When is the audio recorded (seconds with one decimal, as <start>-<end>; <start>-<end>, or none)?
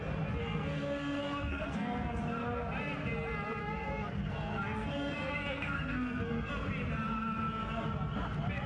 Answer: 0.0-0.4; 2.2-3.6; 6.5-8.7